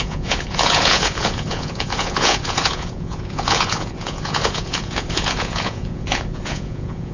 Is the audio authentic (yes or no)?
no